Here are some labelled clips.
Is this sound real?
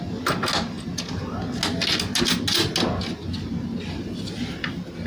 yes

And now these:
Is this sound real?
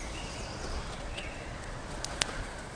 no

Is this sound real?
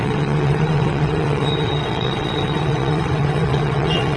no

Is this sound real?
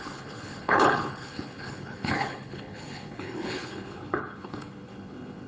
no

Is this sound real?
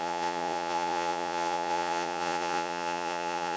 no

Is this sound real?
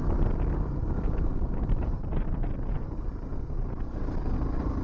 yes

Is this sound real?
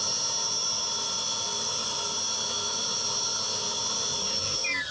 yes